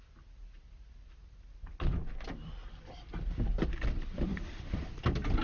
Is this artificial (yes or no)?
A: no